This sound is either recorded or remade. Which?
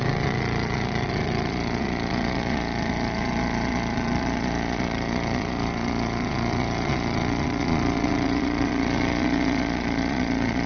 remade